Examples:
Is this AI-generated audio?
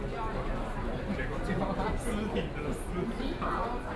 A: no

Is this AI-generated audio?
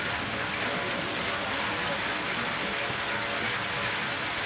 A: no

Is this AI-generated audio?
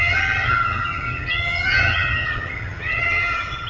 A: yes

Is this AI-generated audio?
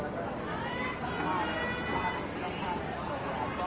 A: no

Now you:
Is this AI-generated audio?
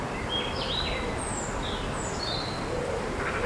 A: no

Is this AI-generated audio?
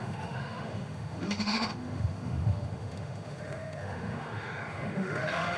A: yes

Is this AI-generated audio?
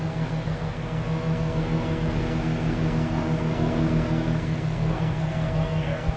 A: yes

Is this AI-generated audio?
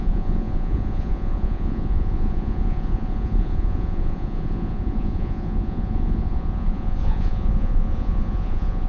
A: yes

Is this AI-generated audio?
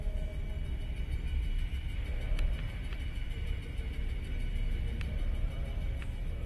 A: no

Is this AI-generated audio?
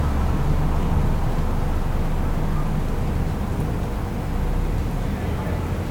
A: no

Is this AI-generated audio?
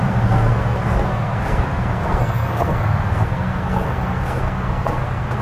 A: yes